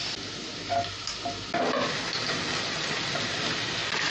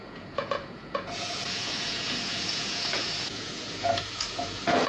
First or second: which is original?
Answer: first